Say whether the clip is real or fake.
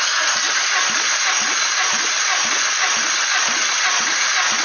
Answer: fake